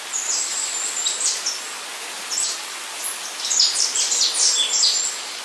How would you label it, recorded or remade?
recorded